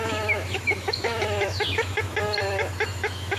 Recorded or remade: remade